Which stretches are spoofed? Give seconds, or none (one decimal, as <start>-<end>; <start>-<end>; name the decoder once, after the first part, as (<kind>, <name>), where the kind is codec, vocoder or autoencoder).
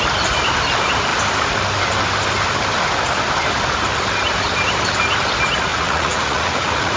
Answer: 5.7-7.0 (vocoder, Vocos)